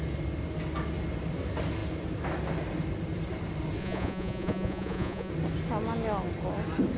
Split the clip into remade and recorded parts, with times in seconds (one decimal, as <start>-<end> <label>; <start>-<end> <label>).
0.0-3.8 recorded; 3.8-5.3 remade; 5.3-7.0 recorded